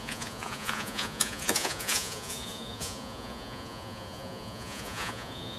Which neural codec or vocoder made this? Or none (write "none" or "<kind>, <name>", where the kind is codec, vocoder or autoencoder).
vocoder, Vocos